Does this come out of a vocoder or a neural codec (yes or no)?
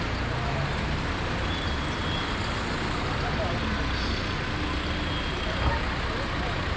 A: no